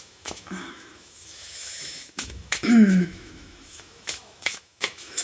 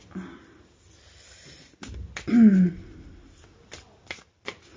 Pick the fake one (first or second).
first